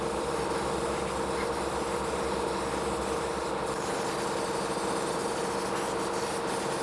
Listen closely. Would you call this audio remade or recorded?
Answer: recorded